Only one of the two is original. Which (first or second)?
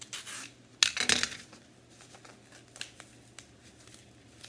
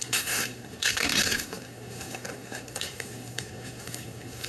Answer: first